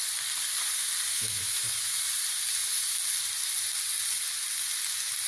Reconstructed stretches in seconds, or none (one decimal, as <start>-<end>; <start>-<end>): 1.1-2.0